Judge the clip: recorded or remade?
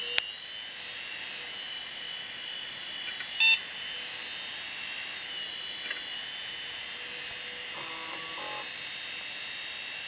recorded